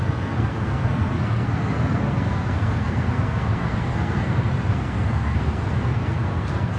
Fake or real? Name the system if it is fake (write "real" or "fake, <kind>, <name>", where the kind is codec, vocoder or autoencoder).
fake, codec, SNAC